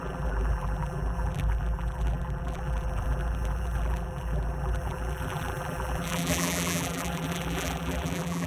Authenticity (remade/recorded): remade